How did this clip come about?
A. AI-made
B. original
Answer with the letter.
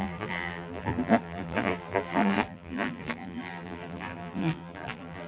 A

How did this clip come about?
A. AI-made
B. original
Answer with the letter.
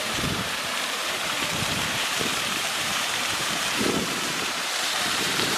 A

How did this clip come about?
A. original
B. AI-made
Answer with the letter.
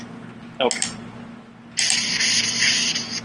A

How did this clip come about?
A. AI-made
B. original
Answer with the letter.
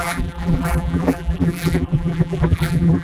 A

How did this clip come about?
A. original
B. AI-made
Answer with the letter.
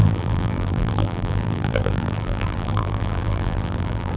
B